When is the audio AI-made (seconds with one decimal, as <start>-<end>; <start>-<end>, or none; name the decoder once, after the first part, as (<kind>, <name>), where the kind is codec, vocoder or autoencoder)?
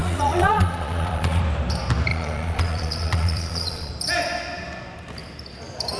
0.0-1.4 (vocoder, Vocos); 2.1-3.9